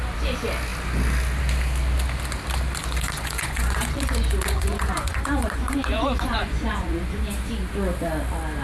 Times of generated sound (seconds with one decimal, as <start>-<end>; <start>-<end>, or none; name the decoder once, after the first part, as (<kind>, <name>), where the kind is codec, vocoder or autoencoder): 2.8-7.2 (vocoder, Vocos)